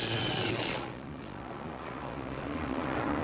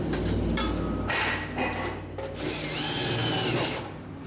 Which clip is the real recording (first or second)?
second